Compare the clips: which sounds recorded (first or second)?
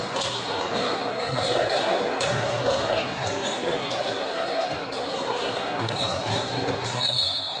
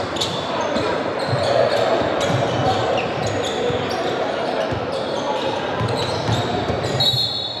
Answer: second